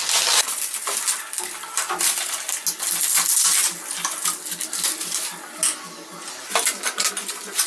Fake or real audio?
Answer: real